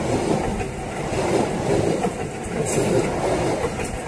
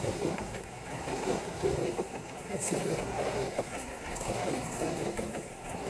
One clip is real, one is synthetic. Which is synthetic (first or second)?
second